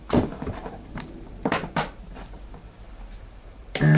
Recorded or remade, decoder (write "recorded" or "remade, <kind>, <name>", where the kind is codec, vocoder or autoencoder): remade, vocoder, BigVGAN v2